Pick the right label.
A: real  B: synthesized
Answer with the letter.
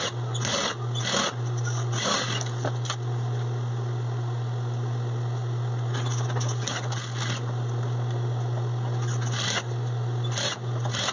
A